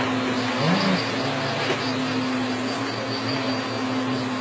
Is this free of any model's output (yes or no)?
yes